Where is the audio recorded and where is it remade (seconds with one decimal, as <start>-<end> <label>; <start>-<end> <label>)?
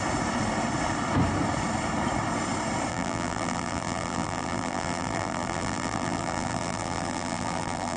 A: 0.0-2.9 recorded; 2.9-8.0 remade